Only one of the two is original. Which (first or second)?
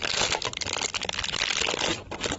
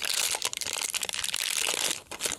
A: first